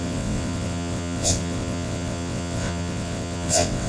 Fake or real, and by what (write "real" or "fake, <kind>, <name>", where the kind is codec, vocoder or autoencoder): fake, vocoder, WaveNeXt